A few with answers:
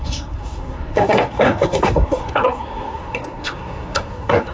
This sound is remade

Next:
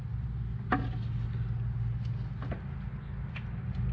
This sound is recorded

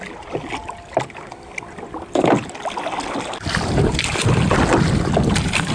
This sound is recorded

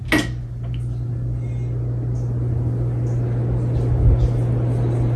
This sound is recorded